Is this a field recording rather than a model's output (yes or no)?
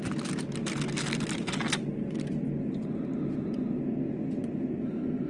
yes